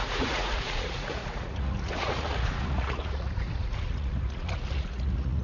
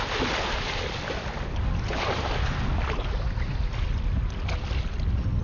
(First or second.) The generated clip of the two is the first